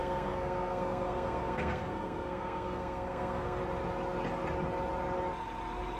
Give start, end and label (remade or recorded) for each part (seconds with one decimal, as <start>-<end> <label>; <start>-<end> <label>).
0.0-3.6 remade; 3.6-6.0 recorded

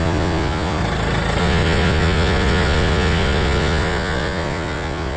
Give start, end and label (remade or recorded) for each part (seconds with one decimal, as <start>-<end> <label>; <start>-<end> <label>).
0.0-0.8 remade; 0.8-1.4 recorded; 1.4-5.2 remade

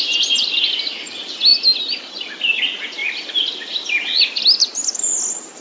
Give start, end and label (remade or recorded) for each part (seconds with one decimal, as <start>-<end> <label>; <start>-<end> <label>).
0.0-3.0 recorded; 3.0-4.4 remade; 4.4-5.6 recorded

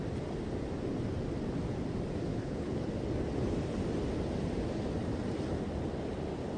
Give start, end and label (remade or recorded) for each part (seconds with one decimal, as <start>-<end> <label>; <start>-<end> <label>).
0.0-2.3 recorded; 2.3-2.9 remade; 2.9-6.6 recorded